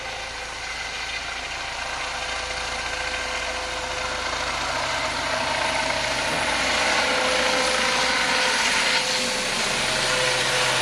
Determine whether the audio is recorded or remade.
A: recorded